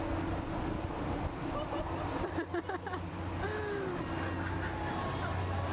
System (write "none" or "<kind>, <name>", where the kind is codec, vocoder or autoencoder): none